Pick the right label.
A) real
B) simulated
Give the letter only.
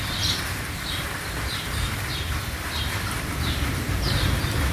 B